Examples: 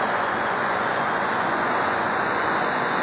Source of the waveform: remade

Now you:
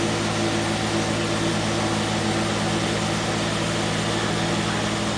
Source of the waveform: recorded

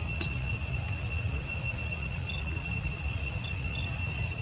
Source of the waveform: remade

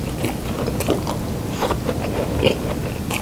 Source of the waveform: recorded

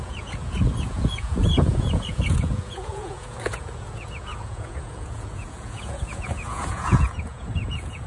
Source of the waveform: remade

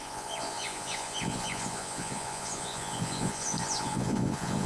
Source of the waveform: remade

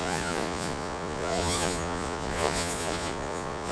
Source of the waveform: remade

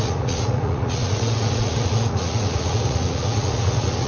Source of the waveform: remade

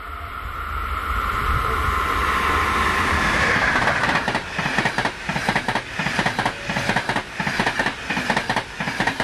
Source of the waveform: recorded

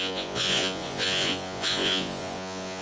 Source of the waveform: remade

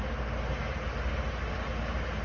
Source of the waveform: recorded